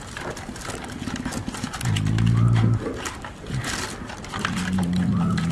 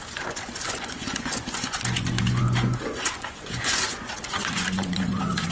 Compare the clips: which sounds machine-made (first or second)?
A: second